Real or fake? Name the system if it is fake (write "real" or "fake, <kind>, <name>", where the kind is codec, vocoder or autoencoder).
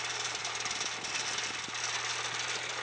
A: real